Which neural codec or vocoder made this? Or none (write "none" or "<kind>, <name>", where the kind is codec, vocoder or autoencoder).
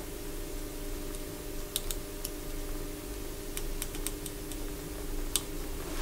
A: none